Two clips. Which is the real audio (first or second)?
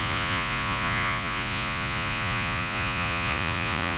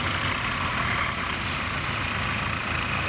second